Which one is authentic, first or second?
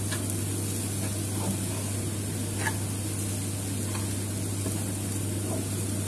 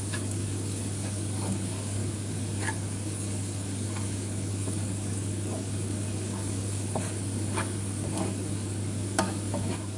first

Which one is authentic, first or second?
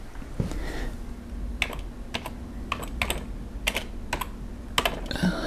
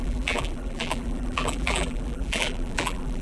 first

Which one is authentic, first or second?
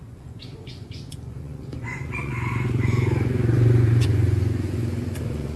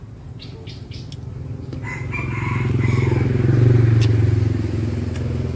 second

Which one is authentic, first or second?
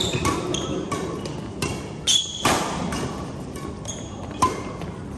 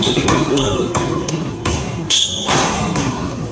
first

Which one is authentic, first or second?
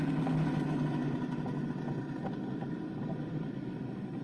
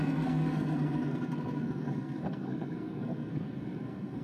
first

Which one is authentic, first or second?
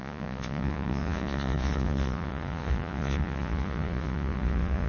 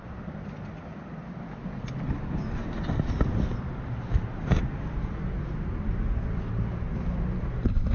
second